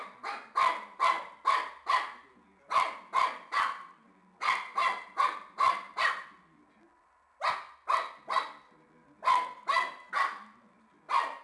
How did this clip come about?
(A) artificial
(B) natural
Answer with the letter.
B